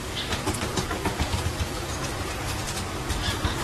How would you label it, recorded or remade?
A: remade